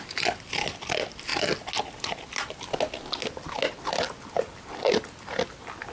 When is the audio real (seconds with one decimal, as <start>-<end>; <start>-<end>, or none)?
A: 0.0-5.9